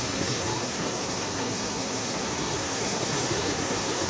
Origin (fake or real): fake